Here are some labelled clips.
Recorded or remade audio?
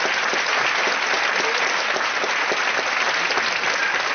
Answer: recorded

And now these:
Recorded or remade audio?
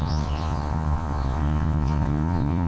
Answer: remade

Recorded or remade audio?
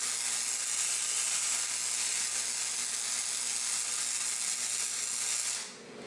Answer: recorded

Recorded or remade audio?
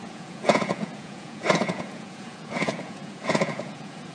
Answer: remade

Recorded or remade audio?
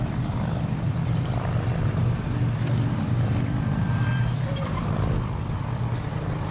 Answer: remade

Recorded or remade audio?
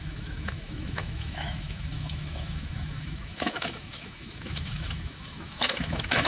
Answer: remade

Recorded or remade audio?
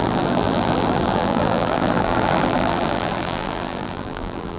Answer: remade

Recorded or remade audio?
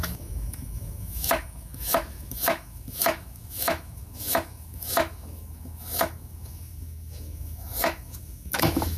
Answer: remade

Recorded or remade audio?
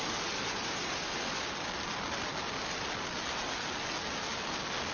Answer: recorded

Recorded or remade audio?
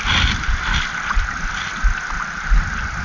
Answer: remade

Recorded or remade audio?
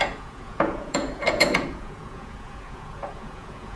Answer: remade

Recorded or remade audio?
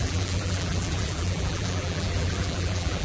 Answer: remade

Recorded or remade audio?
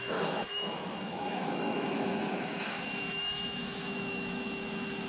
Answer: remade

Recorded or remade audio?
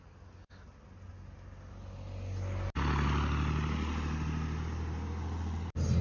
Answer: recorded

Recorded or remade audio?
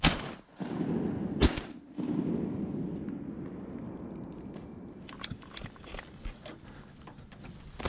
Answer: recorded